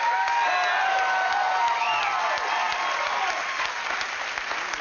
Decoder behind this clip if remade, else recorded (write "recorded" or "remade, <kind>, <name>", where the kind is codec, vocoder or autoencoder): recorded